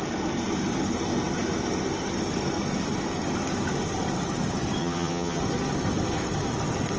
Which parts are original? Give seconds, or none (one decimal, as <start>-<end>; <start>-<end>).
0.0-4.8; 5.4-7.0